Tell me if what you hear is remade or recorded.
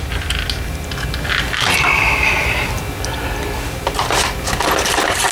recorded